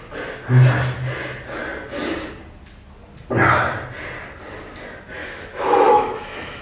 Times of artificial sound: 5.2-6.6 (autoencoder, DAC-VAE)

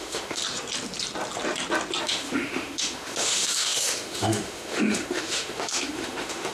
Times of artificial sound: 0.0-0.4 (autoencoder, DAC-VAE); 2.0-6.5

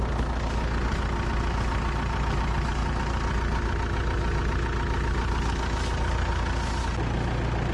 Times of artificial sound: none

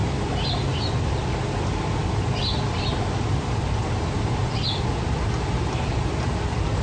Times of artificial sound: none

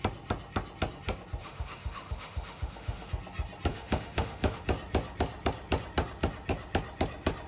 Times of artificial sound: 1.4-3.1 (autoencoder, DAC-VAE); 3.7-4.6

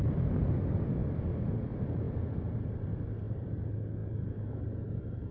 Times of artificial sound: 4.0-4.6 (autoencoder, DAC-VAE)

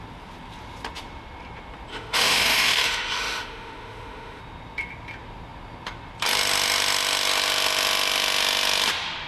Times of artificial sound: 1.9-4.4 (autoencoder, DAC-VAE)

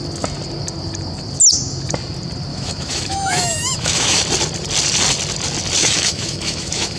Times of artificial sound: 2.5-4.2 (autoencoder, DAC-VAE); 5.8-7.0